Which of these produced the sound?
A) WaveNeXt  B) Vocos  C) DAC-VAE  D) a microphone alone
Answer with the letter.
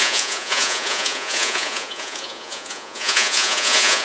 B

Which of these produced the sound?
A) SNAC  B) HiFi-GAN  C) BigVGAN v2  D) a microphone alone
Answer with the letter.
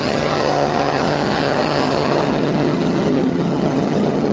B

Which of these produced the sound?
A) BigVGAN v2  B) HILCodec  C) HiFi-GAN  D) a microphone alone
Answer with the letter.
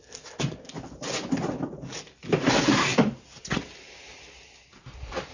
D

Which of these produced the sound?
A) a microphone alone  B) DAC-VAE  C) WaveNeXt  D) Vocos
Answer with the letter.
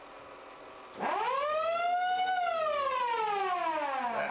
A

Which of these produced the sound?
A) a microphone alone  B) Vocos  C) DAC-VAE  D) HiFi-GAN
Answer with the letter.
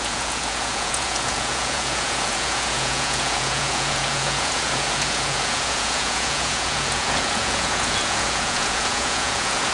B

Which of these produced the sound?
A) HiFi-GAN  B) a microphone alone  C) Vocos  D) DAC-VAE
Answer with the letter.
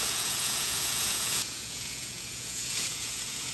C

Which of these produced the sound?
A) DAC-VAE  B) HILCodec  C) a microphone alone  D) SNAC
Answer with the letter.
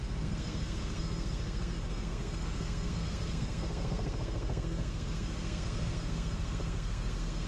D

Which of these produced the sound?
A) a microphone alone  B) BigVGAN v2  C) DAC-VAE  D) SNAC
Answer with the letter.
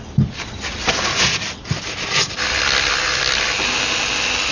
A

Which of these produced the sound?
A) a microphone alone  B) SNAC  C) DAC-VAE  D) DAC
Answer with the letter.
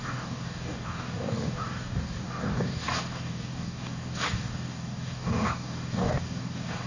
D